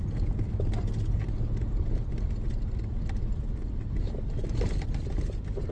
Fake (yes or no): no